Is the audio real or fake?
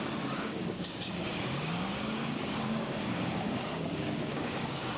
fake